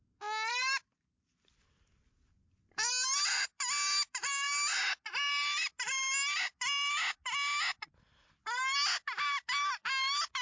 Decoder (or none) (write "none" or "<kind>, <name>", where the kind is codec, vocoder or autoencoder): none